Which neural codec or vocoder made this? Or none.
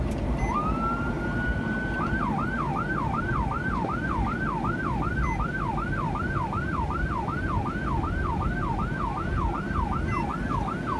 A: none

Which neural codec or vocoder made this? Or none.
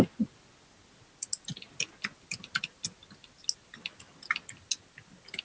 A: none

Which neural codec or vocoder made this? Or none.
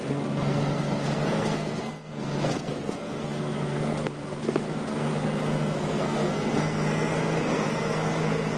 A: codec, SNAC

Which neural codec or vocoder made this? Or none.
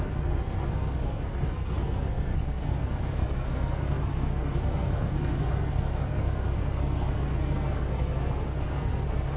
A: codec, SNAC